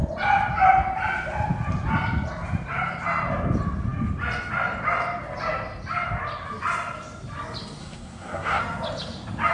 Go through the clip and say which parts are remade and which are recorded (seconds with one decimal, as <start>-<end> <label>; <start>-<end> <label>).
0.0-7.8 recorded; 7.8-8.6 remade; 8.6-9.5 recorded